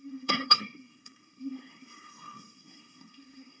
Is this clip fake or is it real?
fake